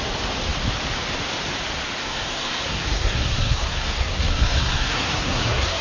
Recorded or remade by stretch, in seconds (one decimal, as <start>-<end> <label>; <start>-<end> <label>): 0.0-2.0 recorded; 2.0-5.8 remade